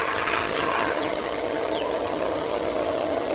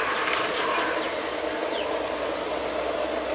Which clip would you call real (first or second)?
second